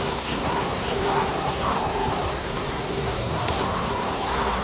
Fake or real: fake